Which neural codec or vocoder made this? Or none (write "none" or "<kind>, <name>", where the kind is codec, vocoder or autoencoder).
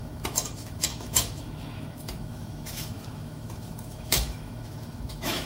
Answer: autoencoder, DAC-VAE